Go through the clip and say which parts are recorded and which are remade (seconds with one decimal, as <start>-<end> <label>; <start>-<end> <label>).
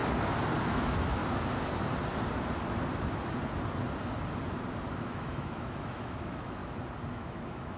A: 0.0-0.6 recorded; 0.6-1.2 remade; 1.2-4.9 recorded; 4.9-6.6 remade; 6.6-7.1 recorded; 7.1-7.8 remade